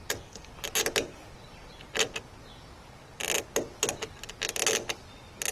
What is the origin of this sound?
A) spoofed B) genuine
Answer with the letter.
B